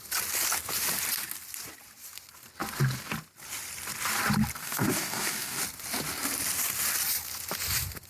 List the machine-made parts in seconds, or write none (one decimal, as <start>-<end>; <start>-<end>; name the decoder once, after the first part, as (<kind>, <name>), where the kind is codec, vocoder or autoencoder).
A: 4.6-5.6 (codec, DAC)